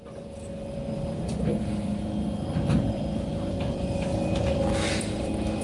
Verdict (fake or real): fake